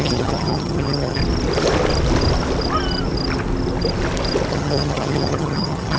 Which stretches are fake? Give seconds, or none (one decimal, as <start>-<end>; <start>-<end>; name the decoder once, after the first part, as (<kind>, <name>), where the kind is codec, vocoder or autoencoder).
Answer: 0.0-1.2 (vocoder, HiFi-GAN); 4.5-6.0